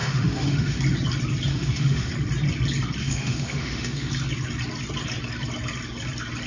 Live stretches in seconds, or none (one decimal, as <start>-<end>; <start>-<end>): 0.8-1.5; 2.1-3.0; 4.1-6.5